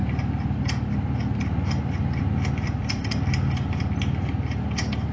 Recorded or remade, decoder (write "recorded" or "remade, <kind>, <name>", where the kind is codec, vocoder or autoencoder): recorded